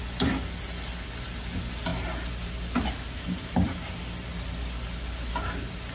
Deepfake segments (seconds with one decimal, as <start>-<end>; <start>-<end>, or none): none